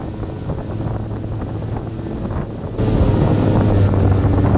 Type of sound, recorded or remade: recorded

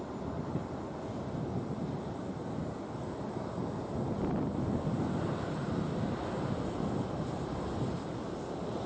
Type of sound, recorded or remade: recorded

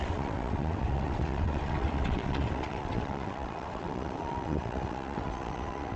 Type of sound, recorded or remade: remade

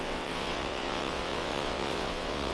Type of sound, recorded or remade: remade